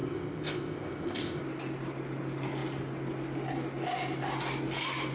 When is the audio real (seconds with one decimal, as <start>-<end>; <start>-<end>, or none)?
1.4-5.1